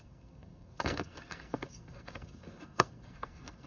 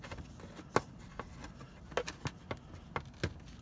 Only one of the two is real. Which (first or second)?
second